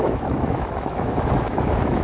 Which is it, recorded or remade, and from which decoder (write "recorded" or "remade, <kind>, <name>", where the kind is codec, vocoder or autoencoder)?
remade, autoencoder, DAC-VAE